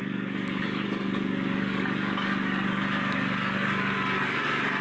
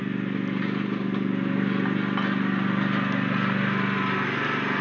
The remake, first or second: first